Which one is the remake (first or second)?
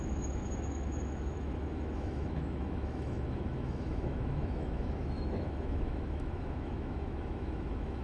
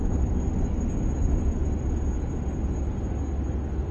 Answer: first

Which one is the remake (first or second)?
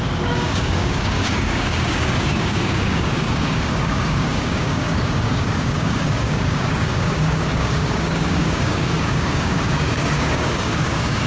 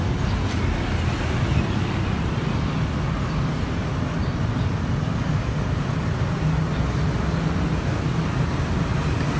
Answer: first